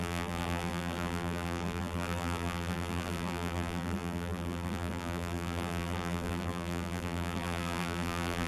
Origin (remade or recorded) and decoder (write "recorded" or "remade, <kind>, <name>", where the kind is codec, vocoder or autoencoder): remade, vocoder, BigVGAN v2